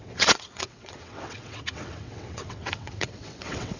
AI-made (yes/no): yes